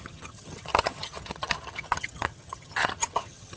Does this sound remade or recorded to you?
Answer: remade